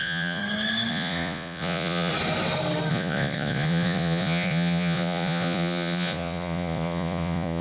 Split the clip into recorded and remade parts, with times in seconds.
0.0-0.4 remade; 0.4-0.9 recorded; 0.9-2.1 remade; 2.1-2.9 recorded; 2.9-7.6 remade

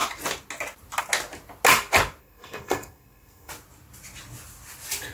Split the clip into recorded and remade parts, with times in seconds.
0.0-2.2 recorded; 2.2-3.5 remade; 3.5-5.1 recorded

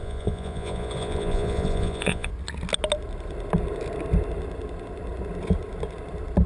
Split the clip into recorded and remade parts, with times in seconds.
0.0-2.3 remade; 2.3-6.5 recorded

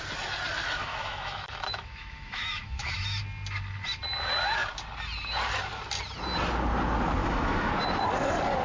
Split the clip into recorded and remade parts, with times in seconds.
0.0-0.8 recorded; 0.8-3.2 remade; 3.2-7.2 recorded; 7.2-7.7 remade; 7.7-8.6 recorded

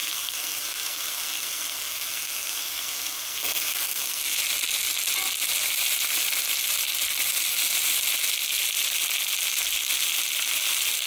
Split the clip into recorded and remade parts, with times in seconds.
0.0-4.4 remade; 4.4-11.1 recorded

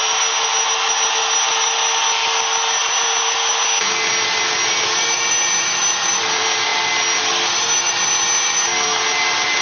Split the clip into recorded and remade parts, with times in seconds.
0.0-9.6 recorded

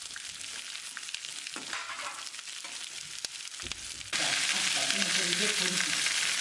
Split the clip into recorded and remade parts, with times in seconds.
0.0-6.4 recorded